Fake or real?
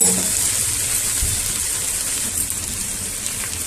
real